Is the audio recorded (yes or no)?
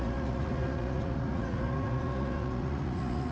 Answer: no